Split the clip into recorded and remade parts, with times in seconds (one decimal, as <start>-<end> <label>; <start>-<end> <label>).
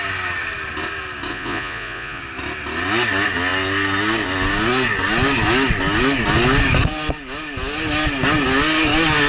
0.0-1.3 recorded; 1.3-2.2 remade; 2.2-9.3 recorded